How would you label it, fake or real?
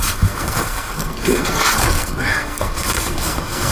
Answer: fake